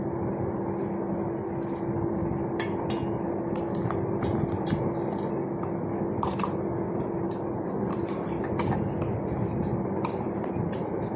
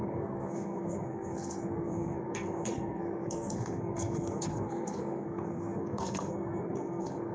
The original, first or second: first